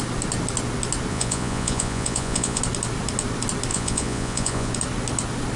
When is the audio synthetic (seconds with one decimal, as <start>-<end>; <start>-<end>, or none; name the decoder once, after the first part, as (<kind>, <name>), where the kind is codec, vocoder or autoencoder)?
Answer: 1.1-2.6 (vocoder, Vocos); 3.7-4.7